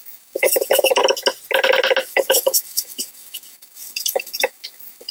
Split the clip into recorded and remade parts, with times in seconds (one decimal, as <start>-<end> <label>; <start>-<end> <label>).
0.0-1.0 remade; 1.0-2.0 recorded; 2.0-5.1 remade